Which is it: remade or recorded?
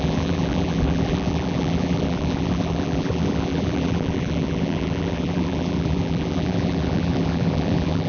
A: remade